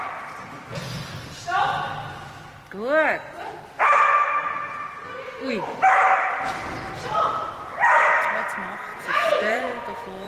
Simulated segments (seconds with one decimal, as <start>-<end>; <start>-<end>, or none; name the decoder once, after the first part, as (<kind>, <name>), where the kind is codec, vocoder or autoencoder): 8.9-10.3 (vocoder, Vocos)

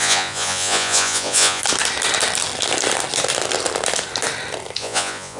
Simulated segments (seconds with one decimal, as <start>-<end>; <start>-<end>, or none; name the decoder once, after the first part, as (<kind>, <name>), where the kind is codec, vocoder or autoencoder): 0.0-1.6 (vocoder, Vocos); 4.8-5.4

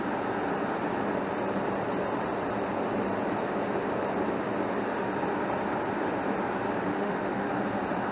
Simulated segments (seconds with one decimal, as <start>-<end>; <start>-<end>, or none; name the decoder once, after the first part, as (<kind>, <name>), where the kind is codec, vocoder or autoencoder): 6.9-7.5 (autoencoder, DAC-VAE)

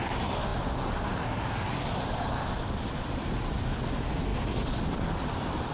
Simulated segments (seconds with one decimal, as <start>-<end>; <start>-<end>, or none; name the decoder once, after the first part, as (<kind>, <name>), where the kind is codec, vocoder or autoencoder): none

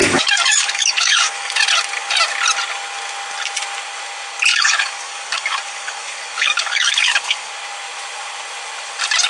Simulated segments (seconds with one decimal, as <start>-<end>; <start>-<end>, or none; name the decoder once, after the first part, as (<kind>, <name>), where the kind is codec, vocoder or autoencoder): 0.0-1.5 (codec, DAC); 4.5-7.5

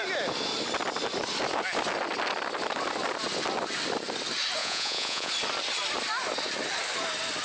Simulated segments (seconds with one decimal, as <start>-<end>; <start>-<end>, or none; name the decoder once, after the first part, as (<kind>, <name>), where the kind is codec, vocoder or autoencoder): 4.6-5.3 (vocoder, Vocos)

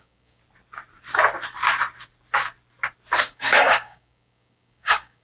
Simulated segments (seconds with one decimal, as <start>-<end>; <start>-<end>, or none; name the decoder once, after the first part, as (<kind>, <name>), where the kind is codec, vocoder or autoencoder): 0.0-0.4 (codec, DAC); 3.2-5.2

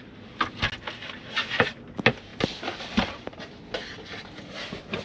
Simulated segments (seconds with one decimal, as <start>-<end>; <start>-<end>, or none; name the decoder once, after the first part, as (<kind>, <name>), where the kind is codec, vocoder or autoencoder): none